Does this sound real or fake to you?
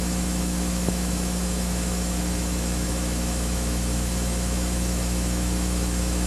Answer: fake